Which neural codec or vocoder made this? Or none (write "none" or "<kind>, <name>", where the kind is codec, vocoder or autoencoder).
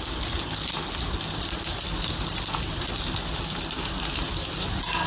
none